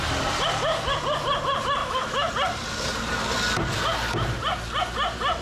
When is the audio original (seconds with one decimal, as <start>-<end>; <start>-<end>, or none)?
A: 0.0-1.8; 2.3-5.4